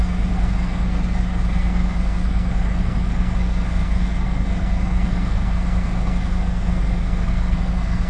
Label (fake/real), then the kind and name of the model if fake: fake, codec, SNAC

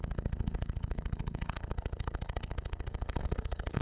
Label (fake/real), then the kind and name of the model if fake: fake, codec, SNAC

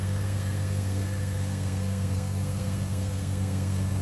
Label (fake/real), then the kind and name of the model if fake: fake, codec, SNAC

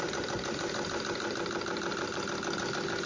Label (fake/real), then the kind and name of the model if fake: real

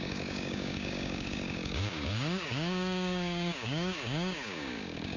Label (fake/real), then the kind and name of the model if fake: fake, codec, DAC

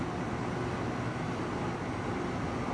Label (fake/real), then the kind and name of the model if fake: real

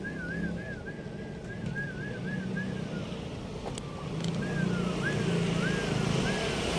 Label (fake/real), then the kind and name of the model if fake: real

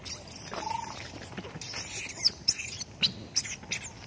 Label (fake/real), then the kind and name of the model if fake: real